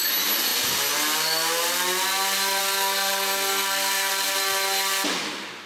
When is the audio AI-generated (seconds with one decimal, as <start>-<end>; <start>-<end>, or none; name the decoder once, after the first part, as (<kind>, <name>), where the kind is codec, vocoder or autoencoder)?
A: 2.6-4.1 (codec, SNAC)